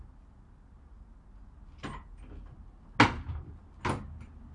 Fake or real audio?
real